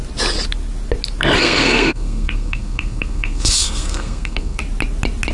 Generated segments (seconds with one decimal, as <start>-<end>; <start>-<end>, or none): 1.4-4.6